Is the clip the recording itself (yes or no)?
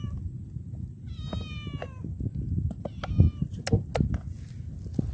yes